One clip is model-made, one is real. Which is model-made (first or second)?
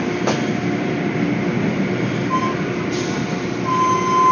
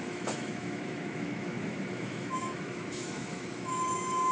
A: second